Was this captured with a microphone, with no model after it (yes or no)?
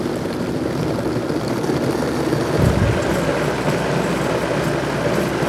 yes